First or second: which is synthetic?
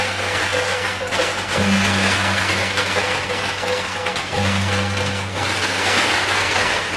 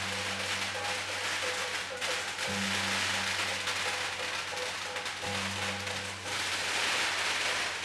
first